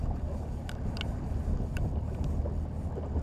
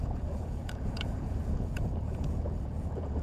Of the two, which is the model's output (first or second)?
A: second